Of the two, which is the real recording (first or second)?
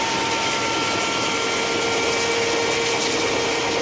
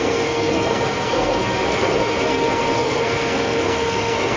first